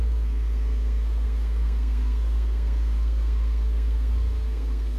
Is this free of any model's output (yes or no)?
no